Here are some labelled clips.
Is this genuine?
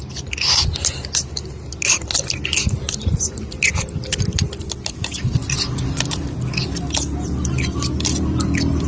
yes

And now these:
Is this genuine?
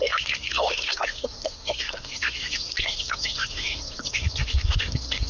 no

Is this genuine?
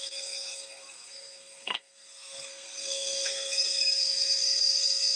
no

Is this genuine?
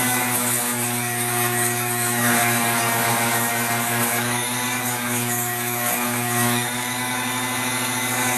no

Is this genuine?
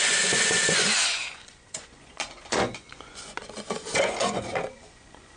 no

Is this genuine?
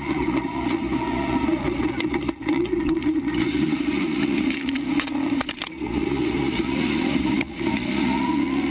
no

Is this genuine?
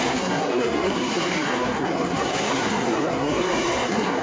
no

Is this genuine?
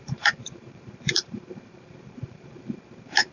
no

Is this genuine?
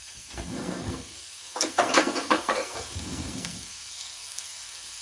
no